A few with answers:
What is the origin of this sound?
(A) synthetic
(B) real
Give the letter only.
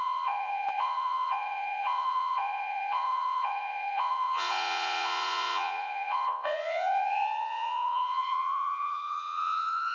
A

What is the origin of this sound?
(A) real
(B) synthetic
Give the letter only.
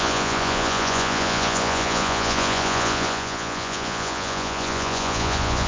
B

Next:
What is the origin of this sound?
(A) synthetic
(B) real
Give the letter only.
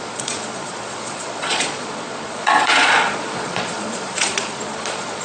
A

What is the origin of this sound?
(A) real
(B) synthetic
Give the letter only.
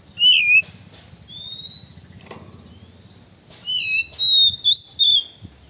A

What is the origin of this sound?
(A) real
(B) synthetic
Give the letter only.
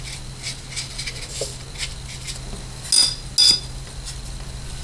A